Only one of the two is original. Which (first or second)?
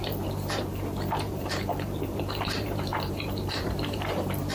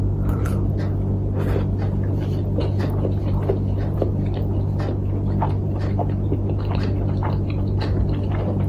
second